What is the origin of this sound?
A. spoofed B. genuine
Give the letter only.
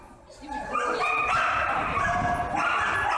B